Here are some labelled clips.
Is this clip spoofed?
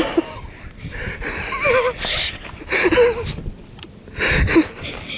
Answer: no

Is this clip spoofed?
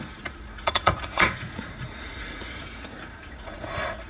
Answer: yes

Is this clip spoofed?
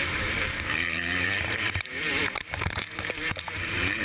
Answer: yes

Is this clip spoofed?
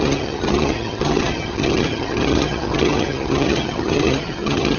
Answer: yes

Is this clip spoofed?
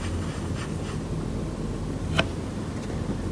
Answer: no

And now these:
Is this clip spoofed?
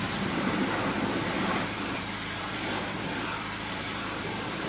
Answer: yes